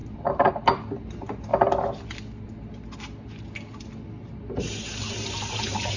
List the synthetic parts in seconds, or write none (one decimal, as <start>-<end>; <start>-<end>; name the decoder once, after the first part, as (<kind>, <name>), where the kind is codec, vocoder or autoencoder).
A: 0.0-1.5 (vocoder, BigVGAN v2); 5.1-6.0